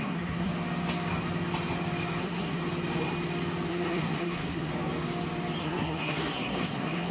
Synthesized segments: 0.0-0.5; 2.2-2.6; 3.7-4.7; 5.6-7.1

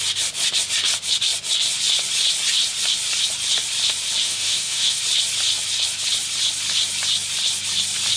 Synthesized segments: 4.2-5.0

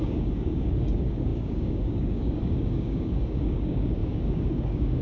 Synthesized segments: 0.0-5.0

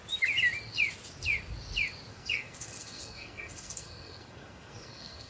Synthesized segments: 2.1-5.3